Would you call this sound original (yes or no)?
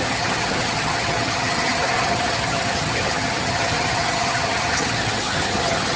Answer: no